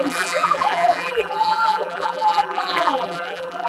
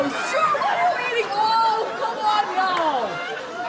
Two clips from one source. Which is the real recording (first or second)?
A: second